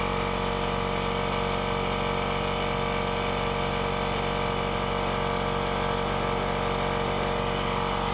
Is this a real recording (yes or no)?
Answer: yes